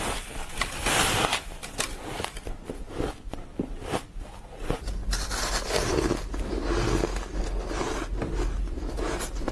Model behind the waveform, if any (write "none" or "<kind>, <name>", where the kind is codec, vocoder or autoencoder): none